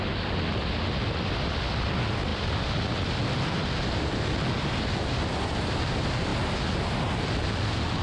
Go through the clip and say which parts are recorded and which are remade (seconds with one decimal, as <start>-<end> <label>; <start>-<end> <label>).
0.0-2.3 recorded; 2.3-3.2 remade; 3.2-8.0 recorded